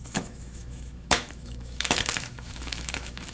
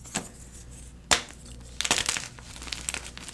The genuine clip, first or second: second